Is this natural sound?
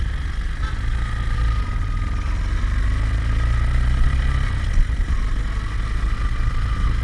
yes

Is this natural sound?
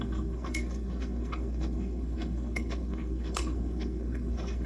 no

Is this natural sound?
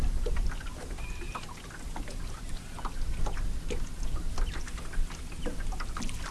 yes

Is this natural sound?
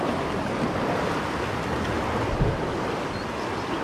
yes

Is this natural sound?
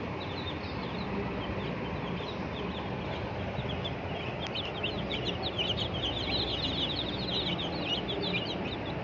yes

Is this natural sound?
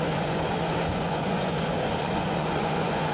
no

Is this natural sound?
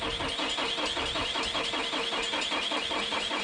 yes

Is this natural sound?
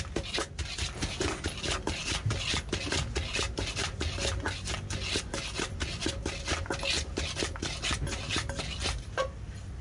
yes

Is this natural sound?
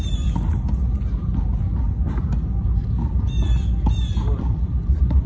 yes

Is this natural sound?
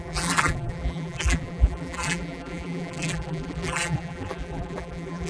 no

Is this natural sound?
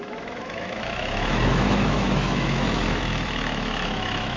no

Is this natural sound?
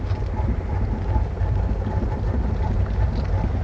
yes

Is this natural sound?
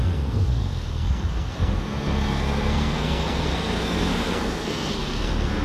no